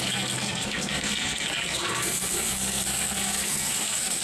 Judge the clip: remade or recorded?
remade